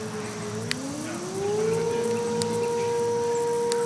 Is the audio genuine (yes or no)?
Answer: yes